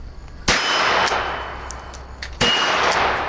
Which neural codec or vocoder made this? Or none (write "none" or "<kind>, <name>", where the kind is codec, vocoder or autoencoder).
none